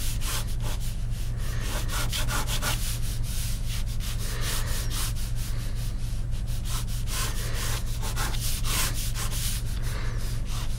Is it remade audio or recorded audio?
recorded